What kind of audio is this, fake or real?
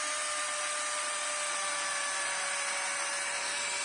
real